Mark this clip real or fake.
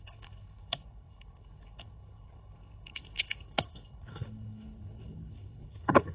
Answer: fake